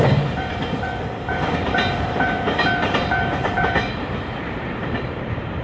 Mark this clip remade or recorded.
remade